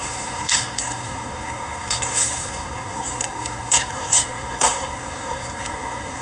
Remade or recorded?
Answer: remade